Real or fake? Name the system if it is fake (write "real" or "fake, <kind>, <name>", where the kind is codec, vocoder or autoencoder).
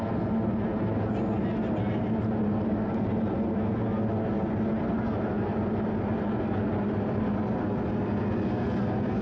real